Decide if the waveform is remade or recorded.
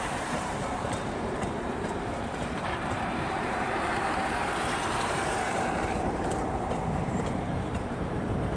remade